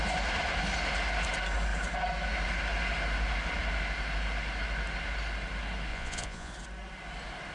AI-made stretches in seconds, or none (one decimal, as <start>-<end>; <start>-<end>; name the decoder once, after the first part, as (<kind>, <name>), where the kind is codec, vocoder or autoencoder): 5.9-6.5 (vocoder, Vocos)